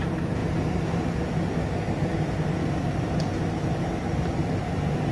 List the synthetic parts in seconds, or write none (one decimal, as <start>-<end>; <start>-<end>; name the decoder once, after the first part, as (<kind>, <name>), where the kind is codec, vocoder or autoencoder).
none